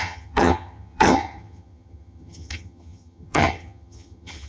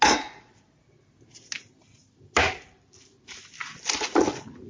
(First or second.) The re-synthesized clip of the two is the first